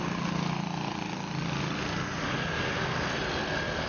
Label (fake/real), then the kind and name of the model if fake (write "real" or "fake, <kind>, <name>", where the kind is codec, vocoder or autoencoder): real